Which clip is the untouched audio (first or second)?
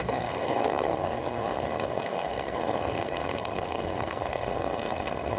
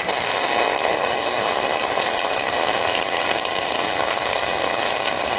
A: second